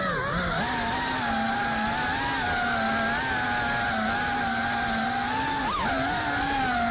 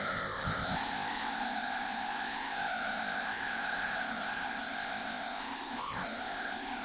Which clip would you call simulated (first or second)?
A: second